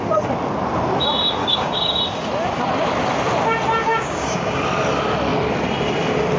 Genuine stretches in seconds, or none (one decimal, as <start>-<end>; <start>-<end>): 0.0-1.4; 2.0-3.8; 4.6-6.4